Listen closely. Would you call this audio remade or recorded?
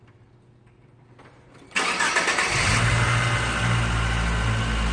recorded